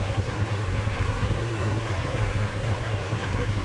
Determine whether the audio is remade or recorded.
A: remade